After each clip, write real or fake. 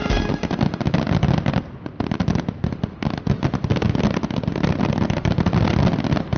real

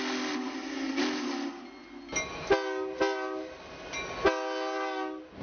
real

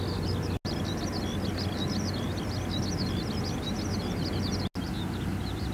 real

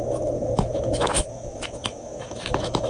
fake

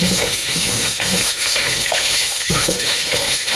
fake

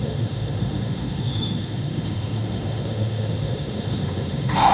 fake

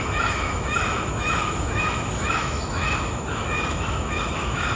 fake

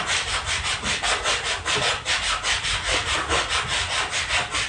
real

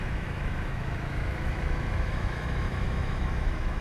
fake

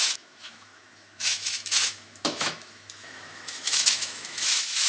fake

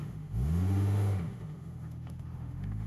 fake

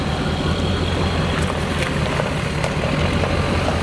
real